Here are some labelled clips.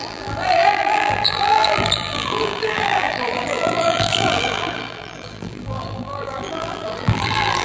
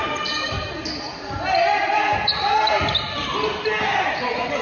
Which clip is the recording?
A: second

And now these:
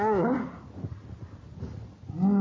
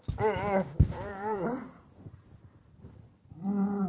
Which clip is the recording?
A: first